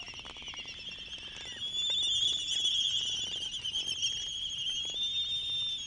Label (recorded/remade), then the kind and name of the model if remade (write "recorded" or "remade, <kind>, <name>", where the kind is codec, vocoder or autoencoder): recorded